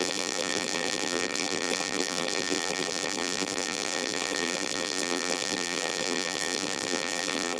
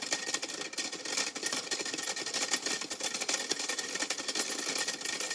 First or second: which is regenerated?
first